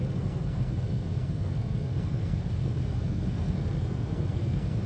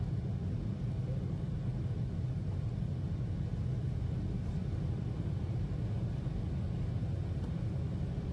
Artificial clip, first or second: first